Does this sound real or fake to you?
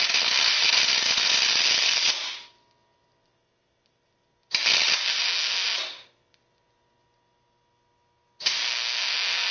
real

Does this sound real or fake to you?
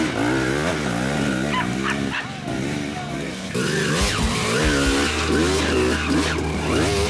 real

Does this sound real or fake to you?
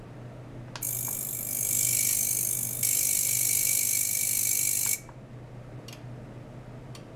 real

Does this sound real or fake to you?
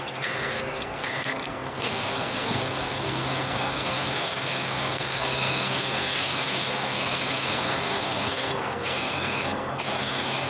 fake